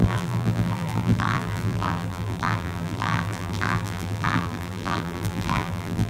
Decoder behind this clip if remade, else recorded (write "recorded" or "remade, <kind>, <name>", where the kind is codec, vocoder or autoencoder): remade, vocoder, BigVGAN v2